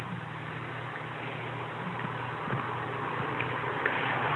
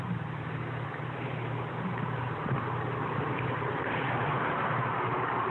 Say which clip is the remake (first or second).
second